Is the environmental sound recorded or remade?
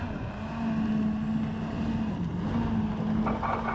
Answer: recorded